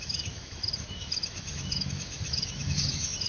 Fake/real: fake